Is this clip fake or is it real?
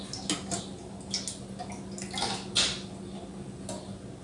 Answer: real